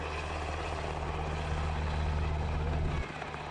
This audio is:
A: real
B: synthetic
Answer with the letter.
A